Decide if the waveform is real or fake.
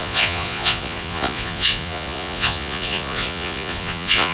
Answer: fake